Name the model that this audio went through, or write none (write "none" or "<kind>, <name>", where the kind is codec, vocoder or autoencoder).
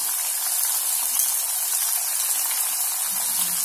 none